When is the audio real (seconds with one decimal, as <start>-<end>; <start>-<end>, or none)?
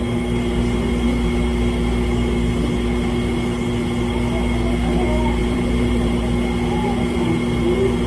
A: 0.0-5.4; 6.2-8.1